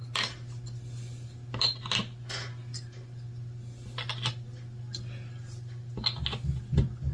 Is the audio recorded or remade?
recorded